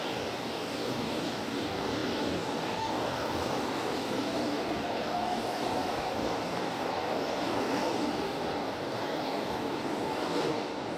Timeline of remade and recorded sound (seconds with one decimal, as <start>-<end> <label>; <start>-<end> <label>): 0.0-11.0 remade

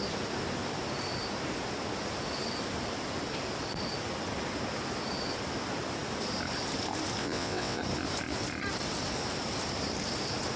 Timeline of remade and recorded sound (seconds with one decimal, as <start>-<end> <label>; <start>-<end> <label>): 0.0-7.2 recorded; 7.2-7.8 remade; 7.8-10.6 recorded

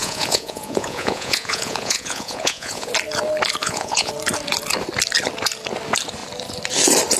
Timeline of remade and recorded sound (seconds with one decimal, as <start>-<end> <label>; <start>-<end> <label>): 0.0-2.9 remade; 2.9-3.6 recorded; 3.6-4.1 remade; 4.1-7.2 recorded

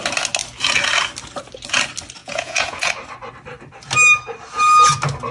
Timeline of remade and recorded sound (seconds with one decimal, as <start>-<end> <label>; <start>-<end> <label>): 0.0-2.2 recorded; 2.2-2.9 remade; 2.9-5.3 recorded

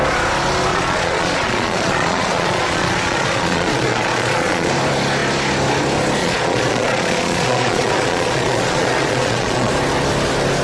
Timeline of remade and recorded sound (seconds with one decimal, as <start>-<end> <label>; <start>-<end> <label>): 0.0-0.7 recorded; 0.7-4.7 remade; 4.7-6.2 recorded; 6.2-9.7 remade; 9.7-10.6 recorded